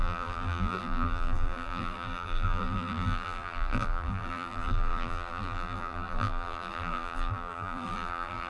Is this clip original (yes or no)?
no